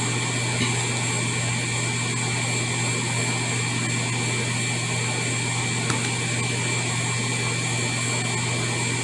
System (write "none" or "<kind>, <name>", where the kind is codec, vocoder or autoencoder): none